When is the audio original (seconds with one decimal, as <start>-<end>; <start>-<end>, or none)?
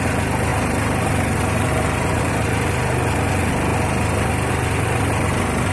0.0-0.5; 2.2-5.7